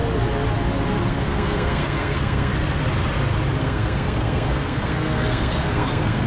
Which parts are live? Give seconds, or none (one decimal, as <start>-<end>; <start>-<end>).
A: 0.0-1.1; 2.5-3.6